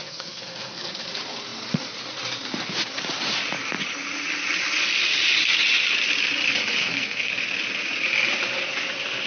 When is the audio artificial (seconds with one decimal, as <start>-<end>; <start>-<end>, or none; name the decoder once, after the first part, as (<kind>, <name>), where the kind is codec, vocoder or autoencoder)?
0.0-0.9 (codec, SNAC); 6.8-7.3